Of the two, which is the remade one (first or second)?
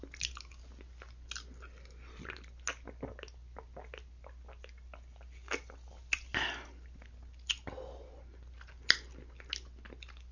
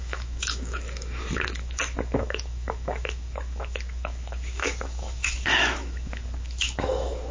second